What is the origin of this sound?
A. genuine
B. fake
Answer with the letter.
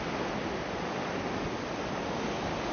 A